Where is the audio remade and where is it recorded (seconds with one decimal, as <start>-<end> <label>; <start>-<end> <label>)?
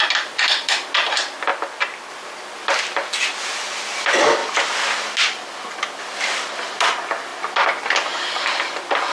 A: 0.0-9.1 recorded